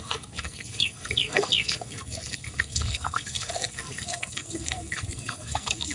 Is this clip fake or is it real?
fake